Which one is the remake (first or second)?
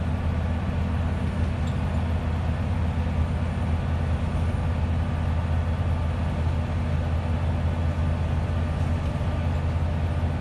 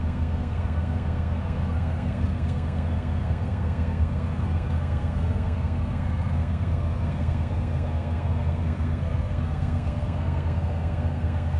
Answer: second